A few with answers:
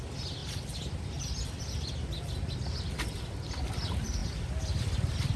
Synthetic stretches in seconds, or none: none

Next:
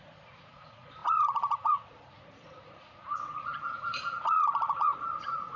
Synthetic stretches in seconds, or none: 0.0-5.6